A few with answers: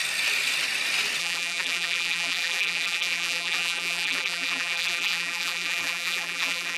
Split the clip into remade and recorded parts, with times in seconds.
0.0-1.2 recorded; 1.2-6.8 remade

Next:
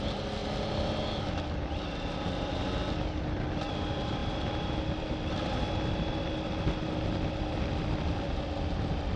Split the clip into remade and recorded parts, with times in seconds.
0.0-9.2 recorded

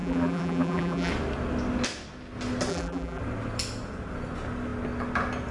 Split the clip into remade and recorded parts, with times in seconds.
0.0-1.1 remade; 1.1-2.7 recorded; 2.7-3.2 remade; 3.2-5.5 recorded

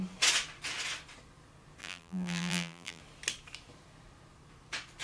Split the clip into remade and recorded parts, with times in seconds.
0.0-1.8 recorded; 1.8-3.0 remade; 3.0-5.0 recorded

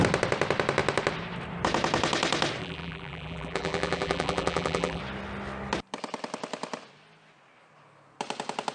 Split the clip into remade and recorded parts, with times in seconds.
0.0-2.6 recorded; 2.6-5.0 remade; 5.0-8.7 recorded

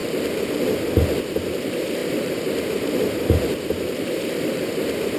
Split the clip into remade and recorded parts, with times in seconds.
0.0-1.2 recorded; 1.2-5.2 remade

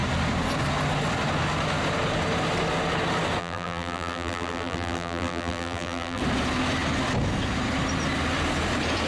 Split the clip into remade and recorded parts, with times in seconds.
0.0-3.4 recorded; 3.4-6.2 remade; 6.2-9.1 recorded

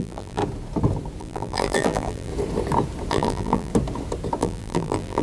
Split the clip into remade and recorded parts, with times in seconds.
0.0-0.4 remade; 0.4-1.2 recorded; 1.2-2.3 remade; 2.3-3.1 recorded; 3.1-3.7 remade; 3.7-4.4 recorded; 4.4-5.2 remade